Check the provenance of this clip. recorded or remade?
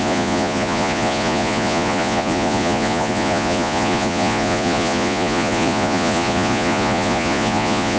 remade